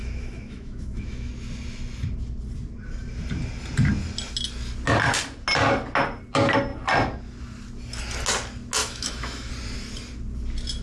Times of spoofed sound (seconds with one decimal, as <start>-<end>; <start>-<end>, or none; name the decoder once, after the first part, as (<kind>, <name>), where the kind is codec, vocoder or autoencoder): 0.0-1.3 (autoencoder, DAC-VAE); 8.8-9.5

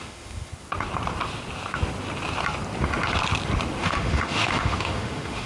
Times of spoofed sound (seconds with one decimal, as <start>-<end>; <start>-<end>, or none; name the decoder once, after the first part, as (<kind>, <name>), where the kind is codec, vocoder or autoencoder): 0.0-0.5 (autoencoder, DAC-VAE); 3.8-5.5